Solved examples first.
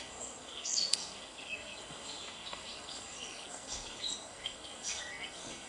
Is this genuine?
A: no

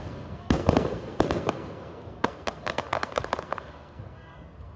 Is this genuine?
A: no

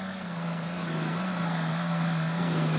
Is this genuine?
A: no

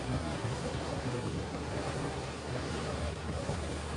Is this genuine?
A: no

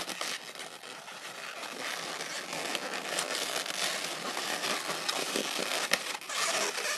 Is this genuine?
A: yes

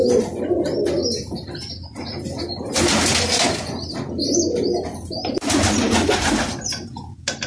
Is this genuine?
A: yes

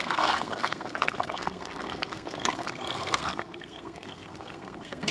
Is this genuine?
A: no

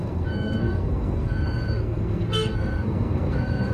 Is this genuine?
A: no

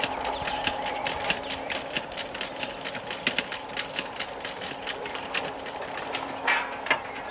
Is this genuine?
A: yes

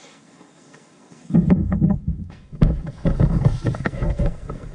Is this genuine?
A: no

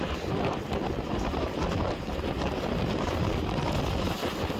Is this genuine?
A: yes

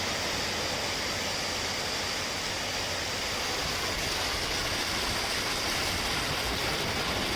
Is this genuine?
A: yes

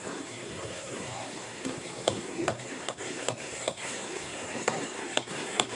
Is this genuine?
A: no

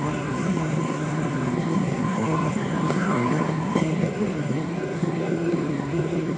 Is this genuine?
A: no